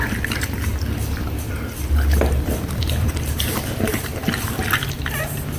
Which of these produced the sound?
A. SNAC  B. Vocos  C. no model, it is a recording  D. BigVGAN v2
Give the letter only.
C